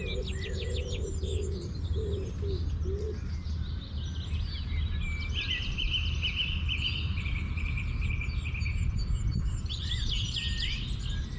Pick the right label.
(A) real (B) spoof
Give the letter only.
A